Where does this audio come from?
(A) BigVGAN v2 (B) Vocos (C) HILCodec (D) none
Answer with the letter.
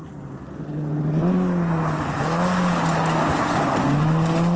D